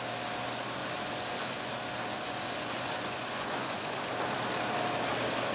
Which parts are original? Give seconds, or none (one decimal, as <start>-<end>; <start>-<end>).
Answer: 0.0-0.8; 1.7-2.1; 4.1-5.5